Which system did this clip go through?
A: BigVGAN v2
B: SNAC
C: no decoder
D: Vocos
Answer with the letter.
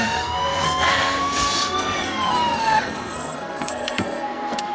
B